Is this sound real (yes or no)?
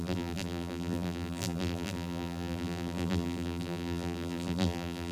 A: no